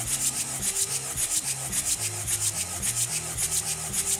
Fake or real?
real